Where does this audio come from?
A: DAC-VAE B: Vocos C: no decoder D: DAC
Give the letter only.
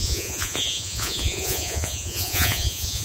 B